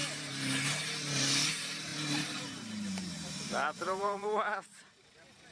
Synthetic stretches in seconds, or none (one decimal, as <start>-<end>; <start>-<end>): 1.9-5.1